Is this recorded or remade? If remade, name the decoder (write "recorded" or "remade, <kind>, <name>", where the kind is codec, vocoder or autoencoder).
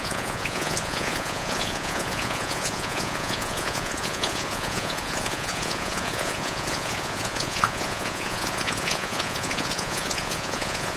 remade, vocoder, Vocos